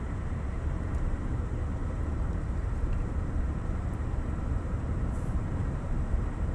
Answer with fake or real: fake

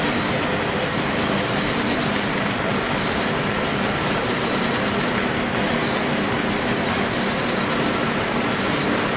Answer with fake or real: fake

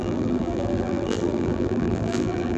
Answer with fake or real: fake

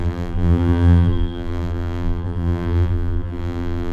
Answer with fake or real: fake